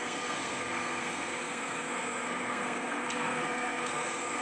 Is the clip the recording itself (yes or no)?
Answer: no